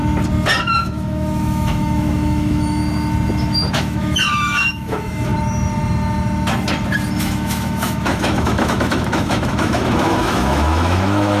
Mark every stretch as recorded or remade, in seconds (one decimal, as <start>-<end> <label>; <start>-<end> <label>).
0.0-0.6 recorded; 0.6-2.8 remade; 2.8-3.8 recorded; 3.8-5.3 remade; 5.3-7.2 recorded; 7.2-11.4 remade